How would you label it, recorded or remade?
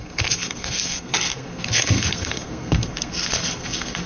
remade